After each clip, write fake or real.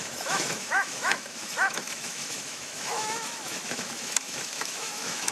fake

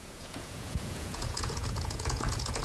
fake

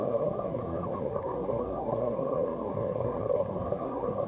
fake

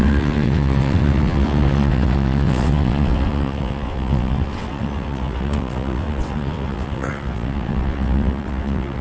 fake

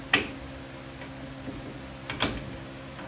real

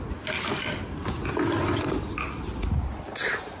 real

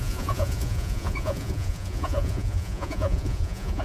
fake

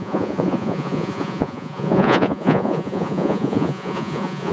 fake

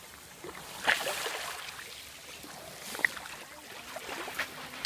real